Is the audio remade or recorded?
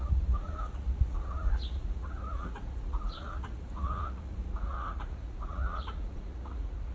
remade